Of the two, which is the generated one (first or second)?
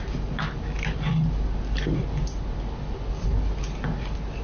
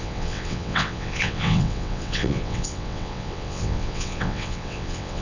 second